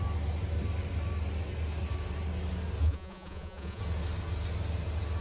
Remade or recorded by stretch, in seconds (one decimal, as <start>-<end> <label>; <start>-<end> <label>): 0.0-2.8 recorded; 2.8-3.8 remade; 3.8-5.2 recorded